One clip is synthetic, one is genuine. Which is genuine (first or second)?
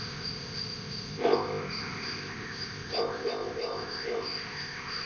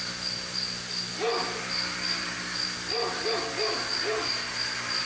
second